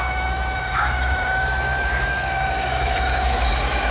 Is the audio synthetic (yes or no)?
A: yes